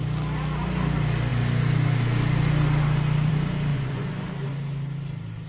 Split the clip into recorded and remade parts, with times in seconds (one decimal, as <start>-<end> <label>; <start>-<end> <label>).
0.0-3.7 recorded; 3.7-4.3 remade; 4.3-5.5 recorded